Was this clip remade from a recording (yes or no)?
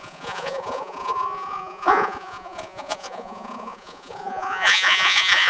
yes